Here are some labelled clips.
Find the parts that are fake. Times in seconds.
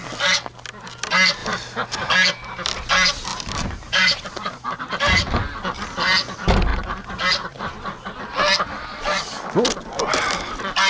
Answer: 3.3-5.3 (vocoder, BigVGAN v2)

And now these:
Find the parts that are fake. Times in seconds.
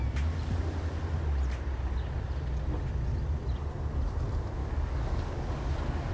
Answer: 4.6-6.1 (codec, DAC)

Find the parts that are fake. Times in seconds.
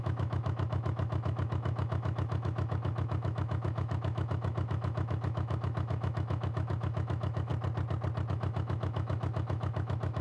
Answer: 0.0-7.5 (autoencoder, DAC-VAE); 8.3-10.2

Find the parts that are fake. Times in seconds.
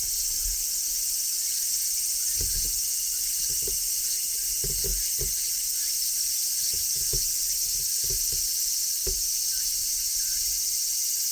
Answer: none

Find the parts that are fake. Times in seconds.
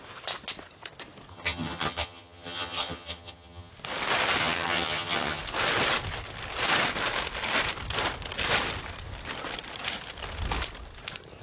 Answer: 1.3-3.7 (vocoder, HiFi-GAN); 4.4-5.4